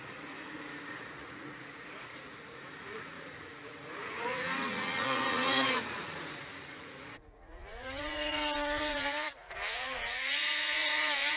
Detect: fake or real fake